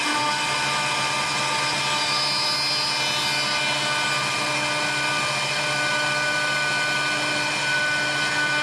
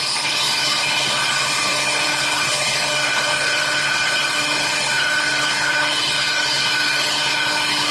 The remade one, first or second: second